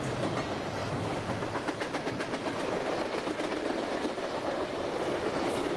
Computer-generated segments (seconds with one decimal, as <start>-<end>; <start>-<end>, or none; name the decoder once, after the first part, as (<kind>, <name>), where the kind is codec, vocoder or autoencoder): 0.0-5.8 (vocoder, BigVGAN v2)

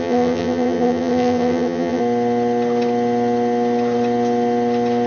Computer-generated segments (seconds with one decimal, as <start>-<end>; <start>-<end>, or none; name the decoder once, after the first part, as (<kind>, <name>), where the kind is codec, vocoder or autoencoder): 0.0-2.0 (vocoder, BigVGAN v2)

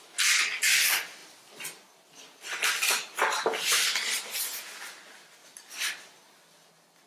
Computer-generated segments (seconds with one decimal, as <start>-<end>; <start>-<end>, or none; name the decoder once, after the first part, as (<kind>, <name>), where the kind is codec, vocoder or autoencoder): 5.4-5.9 (vocoder, BigVGAN v2)

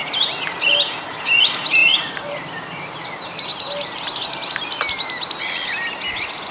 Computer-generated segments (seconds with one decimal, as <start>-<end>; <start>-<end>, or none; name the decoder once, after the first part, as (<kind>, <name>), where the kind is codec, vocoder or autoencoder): 0.0-1.0 (vocoder, BigVGAN v2); 1.8-3.0

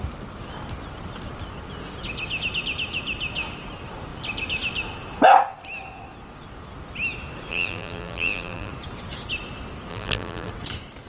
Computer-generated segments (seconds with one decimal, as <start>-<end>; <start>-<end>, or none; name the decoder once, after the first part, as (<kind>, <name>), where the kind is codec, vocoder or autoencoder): 7.5-8.7 (vocoder, BigVGAN v2); 9.9-10.5

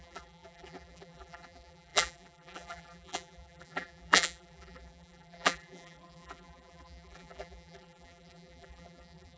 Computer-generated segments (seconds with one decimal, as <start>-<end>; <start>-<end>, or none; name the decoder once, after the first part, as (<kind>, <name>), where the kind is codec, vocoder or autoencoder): 0.0-9.4 (vocoder, BigVGAN v2)